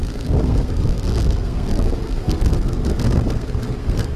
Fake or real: fake